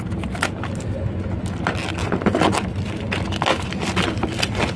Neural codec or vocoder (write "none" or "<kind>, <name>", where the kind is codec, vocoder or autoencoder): none